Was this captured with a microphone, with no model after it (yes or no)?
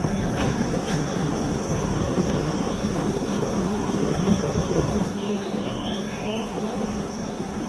no